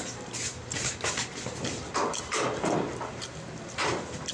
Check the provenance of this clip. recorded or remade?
recorded